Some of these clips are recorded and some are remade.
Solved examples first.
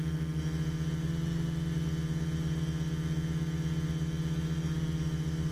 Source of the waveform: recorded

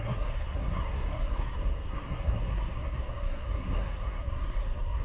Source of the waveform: remade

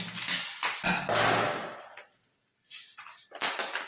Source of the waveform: recorded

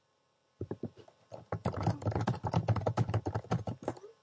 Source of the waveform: remade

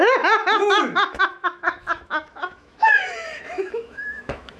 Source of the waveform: remade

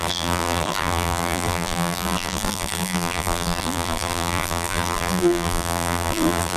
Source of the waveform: remade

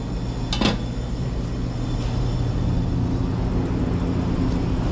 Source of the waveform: recorded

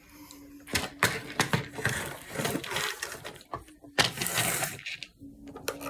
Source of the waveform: recorded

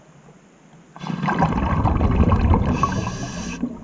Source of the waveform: recorded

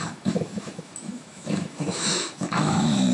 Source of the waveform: remade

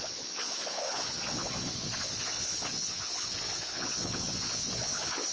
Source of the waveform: remade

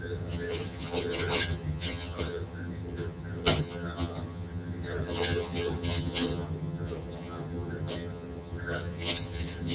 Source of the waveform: remade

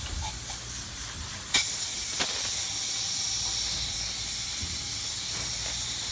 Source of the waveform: recorded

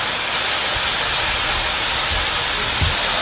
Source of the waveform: recorded